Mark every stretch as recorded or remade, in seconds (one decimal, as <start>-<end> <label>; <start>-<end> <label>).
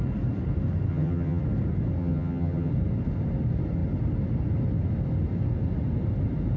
0.0-0.9 recorded; 0.9-1.4 remade; 1.4-2.0 recorded; 2.0-2.7 remade; 2.7-6.6 recorded